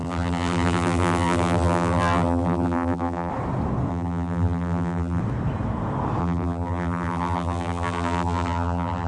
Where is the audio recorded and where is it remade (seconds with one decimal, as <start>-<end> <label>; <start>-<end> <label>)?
0.0-3.3 remade; 3.3-3.9 recorded; 3.9-5.2 remade; 5.2-6.2 recorded; 6.2-9.1 remade